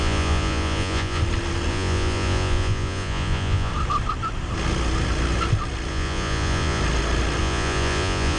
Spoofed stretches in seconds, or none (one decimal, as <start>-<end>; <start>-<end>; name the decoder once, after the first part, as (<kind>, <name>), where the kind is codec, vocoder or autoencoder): 0.0-1.2 (vocoder, Vocos); 1.7-3.7; 5.9-6.8; 7.4-8.4